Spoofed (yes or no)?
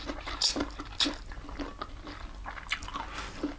no